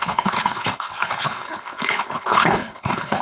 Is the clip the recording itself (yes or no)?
no